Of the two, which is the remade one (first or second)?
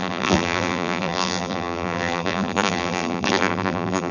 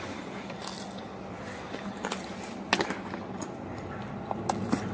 first